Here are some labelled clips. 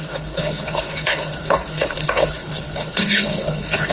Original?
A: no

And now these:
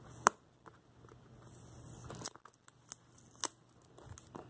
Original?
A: yes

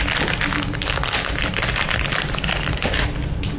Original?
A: yes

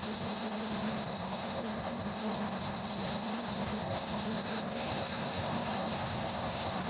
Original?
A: no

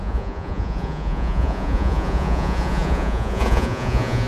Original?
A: no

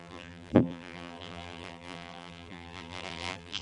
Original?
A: no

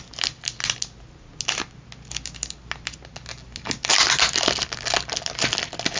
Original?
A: yes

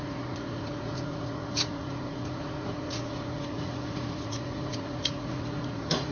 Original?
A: no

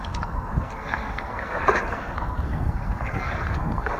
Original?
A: no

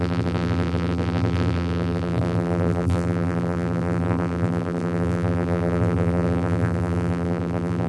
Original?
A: no